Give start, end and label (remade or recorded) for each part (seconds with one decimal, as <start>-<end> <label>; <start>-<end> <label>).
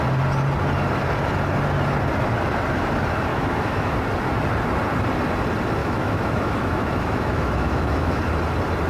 0.0-3.3 recorded; 3.3-3.9 remade; 3.9-5.8 recorded; 5.8-8.2 remade; 8.2-8.9 recorded